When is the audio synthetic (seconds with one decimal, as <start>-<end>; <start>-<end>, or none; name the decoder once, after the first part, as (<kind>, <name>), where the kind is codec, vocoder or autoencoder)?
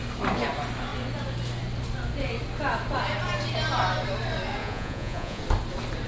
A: 4.6-5.4 (vocoder, Vocos)